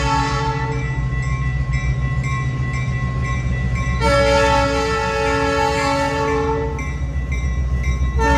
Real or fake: real